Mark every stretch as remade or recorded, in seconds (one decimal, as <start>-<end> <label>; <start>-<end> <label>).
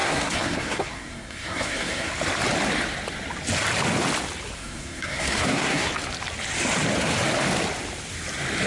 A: 0.0-2.1 remade; 2.1-4.6 recorded; 4.6-5.9 remade; 5.9-8.7 recorded